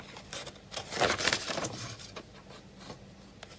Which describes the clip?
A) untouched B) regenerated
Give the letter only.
A